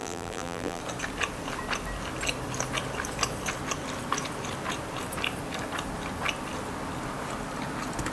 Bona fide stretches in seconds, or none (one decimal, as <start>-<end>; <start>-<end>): 0.8-8.1